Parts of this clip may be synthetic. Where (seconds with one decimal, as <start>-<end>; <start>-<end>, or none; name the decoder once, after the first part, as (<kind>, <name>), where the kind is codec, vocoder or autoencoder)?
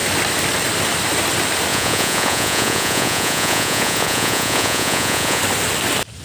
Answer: 1.7-5.4 (vocoder, Vocos)